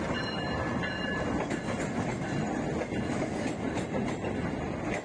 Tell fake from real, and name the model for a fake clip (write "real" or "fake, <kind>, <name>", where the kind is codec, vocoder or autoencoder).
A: real